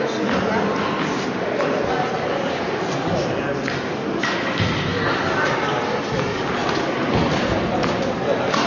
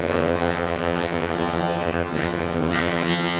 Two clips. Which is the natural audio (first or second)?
first